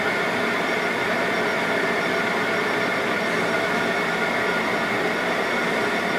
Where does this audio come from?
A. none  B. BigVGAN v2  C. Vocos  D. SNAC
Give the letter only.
A